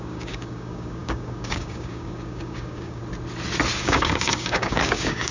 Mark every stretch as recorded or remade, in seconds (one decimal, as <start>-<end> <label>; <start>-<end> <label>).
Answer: 0.0-3.0 remade; 3.0-3.8 recorded; 3.8-5.3 remade